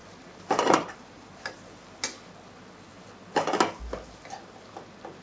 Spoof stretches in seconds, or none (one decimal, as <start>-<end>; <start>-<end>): 0.0-1.5